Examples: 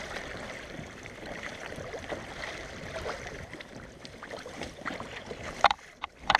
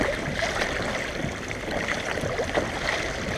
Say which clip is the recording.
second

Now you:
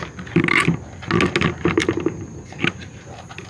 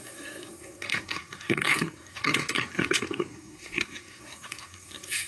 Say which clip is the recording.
first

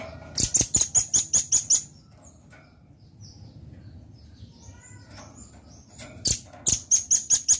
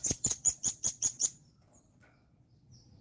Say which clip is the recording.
first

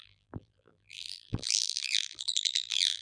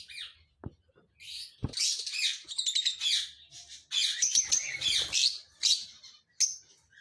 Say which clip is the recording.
second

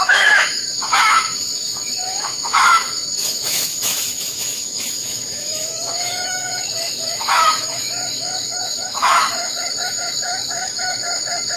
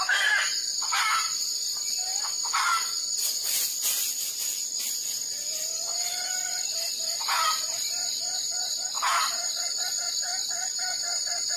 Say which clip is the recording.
second